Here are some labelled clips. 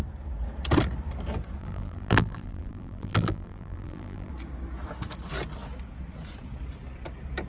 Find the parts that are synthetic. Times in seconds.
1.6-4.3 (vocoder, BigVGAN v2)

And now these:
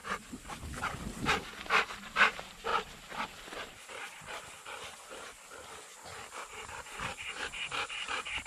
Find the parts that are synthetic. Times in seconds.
none

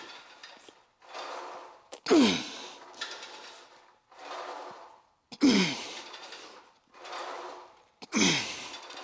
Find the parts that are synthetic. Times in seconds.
5.5-8.2 (vocoder, BigVGAN v2)

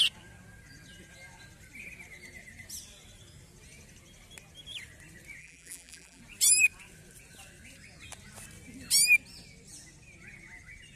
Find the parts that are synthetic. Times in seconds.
5.4-6.2 (vocoder, BigVGAN v2)